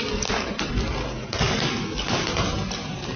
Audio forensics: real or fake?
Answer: real